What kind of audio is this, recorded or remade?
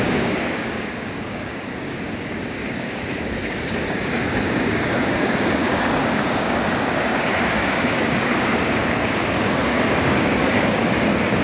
remade